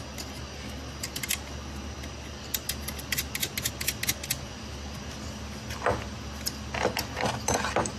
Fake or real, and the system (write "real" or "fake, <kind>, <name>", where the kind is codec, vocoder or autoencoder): real